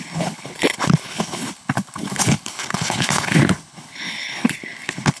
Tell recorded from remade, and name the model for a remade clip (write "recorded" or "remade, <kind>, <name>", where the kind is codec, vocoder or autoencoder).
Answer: remade, codec, HILCodec